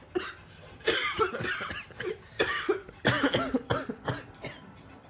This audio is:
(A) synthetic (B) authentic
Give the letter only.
B